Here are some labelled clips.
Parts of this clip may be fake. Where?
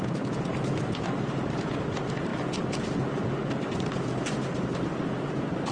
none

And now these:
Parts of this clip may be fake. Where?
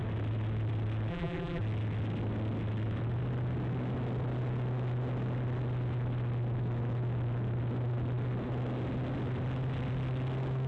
1.1-1.6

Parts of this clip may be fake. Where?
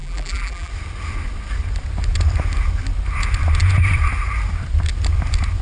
0.0-0.7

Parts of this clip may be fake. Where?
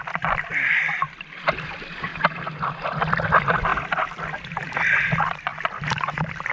0.0-2.1; 2.6-3.7; 4.4-6.5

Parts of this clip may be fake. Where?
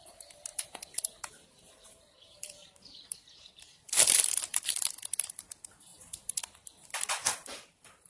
0.5-4.9; 5.9-6.4; 7.3-8.1